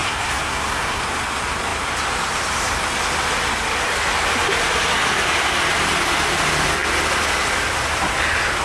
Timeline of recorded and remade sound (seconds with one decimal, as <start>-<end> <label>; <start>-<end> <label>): 0.0-1.0 remade; 1.0-8.6 recorded